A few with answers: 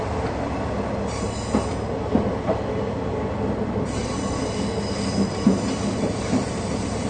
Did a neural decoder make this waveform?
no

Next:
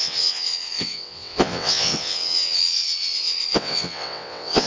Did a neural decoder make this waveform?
yes